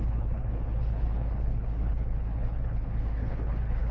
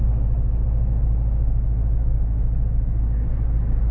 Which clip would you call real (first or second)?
second